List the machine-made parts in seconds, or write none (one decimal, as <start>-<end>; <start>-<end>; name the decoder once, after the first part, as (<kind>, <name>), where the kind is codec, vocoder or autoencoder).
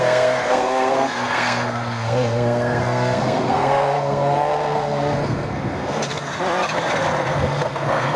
0.0-6.3 (codec, SNAC); 7.3-8.2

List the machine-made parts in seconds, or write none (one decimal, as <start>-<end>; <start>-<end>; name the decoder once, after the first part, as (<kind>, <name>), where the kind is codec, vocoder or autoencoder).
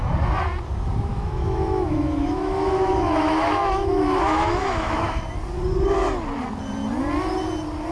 1.1-5.2 (autoencoder, DAC-VAE)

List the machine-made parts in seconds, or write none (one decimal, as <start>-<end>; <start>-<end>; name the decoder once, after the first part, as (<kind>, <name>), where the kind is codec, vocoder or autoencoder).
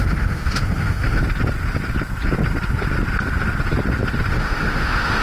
0.0-1.2 (autoencoder, DAC-VAE); 4.3-5.2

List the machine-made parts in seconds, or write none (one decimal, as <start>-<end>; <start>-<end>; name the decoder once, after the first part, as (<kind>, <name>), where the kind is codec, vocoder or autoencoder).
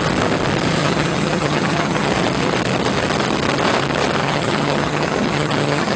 0.8-2.1 (vocoder, HiFi-GAN); 4.2-6.0